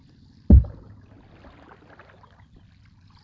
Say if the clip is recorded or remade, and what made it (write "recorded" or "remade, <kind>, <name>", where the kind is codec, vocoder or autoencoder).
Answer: recorded